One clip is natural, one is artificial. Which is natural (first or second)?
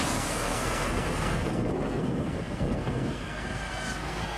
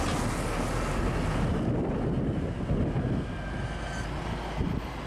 second